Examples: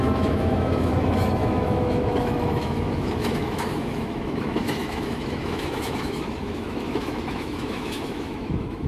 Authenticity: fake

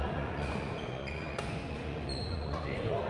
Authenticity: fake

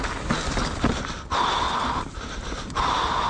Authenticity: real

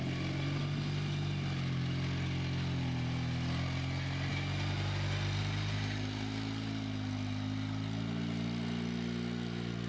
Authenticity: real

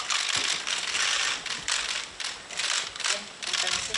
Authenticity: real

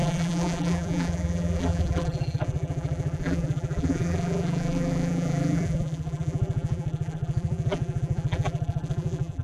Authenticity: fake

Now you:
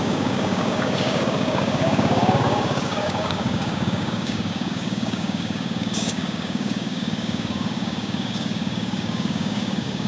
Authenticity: fake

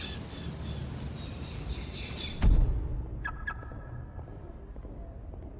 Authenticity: real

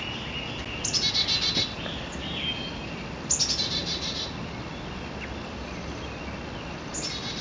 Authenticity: real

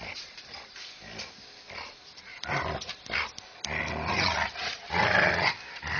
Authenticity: real